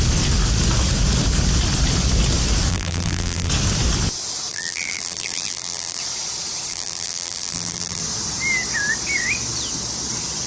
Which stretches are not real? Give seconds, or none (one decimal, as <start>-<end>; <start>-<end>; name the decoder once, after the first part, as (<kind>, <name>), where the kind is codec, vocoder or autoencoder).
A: 2.7-3.5 (vocoder, BigVGAN v2); 4.5-6.0; 6.7-8.0